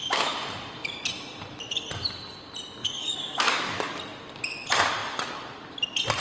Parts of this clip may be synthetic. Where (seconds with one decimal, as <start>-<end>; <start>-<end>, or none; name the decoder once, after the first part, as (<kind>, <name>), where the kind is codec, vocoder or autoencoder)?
2.8-4.0 (codec, DAC)